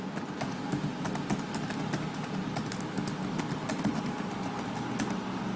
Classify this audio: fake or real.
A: real